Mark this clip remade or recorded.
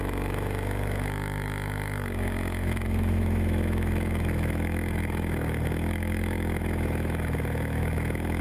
remade